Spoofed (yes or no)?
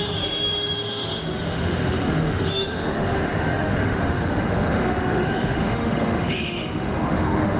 yes